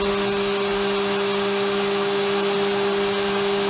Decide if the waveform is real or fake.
real